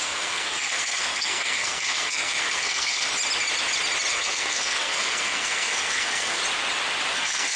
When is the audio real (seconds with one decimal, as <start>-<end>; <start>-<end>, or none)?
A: 3.1-4.1; 6.4-7.1